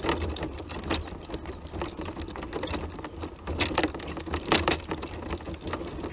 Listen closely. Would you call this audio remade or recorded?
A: recorded